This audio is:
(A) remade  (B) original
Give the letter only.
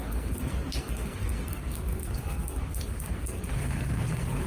A